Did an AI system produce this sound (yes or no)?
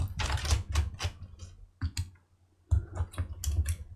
no